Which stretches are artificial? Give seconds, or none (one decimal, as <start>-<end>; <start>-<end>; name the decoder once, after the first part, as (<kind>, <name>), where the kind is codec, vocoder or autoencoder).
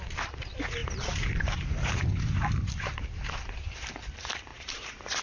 0.8-3.9 (vocoder, BigVGAN v2); 4.5-5.2